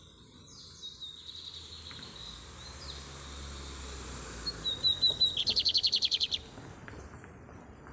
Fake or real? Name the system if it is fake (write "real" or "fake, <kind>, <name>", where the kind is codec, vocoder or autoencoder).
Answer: real